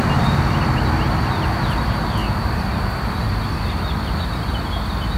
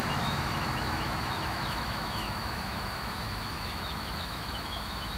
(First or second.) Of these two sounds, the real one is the first